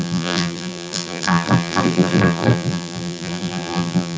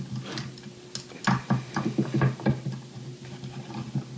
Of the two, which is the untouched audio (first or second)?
second